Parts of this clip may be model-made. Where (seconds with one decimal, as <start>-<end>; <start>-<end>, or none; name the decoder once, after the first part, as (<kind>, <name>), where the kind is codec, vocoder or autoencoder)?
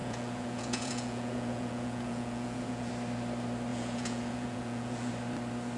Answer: 0.0-2.9 (vocoder, Vocos); 3.7-5.1